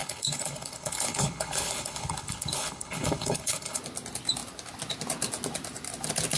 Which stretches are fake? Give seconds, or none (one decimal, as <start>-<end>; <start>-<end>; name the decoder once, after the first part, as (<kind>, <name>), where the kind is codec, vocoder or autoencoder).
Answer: 0.0-3.8 (codec, HILCodec)

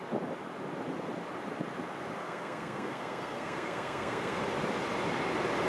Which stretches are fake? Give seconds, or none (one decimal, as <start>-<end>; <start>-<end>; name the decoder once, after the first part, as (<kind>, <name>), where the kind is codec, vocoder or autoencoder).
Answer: 2.2-4.4 (codec, SNAC)